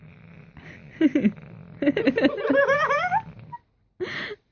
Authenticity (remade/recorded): recorded